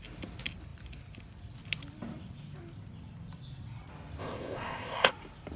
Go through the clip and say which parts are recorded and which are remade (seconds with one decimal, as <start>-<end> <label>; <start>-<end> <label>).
0.0-4.2 recorded; 4.2-5.1 remade; 5.1-5.6 recorded